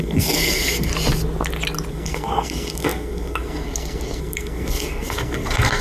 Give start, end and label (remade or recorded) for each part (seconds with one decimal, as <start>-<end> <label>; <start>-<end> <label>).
0.0-0.9 remade; 0.9-1.9 recorded; 1.9-5.8 remade